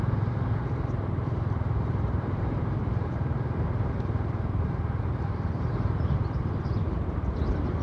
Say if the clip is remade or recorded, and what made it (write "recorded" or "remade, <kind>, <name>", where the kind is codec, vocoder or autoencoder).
remade, vocoder, BigVGAN v2